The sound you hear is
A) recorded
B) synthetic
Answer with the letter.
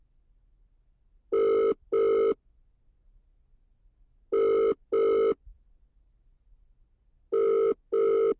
A